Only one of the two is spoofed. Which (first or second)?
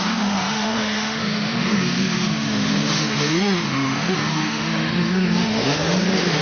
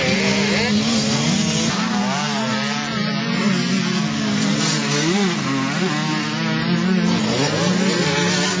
first